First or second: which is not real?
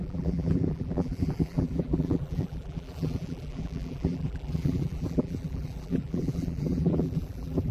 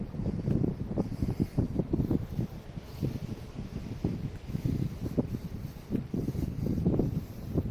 first